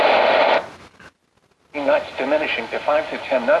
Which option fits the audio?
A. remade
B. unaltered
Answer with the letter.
B